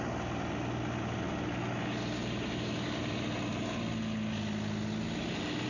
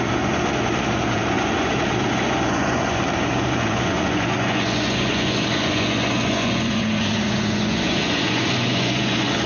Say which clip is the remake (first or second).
second